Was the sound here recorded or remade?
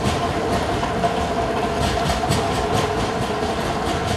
recorded